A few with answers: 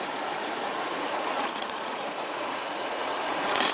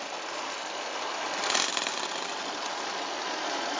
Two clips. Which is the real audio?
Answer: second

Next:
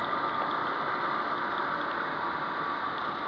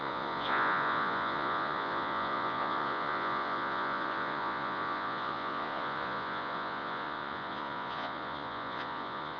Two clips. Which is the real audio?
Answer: first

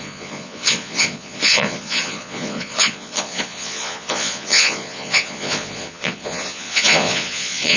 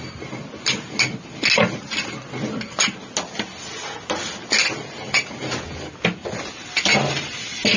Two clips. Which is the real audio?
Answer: second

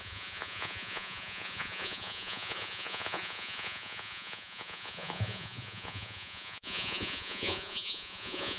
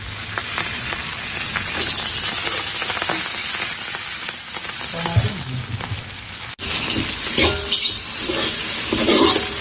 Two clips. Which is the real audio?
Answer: second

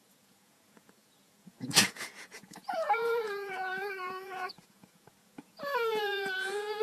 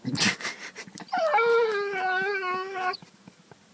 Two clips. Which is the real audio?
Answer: second